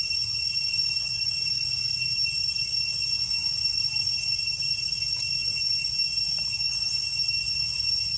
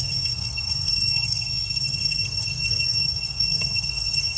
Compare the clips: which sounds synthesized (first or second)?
second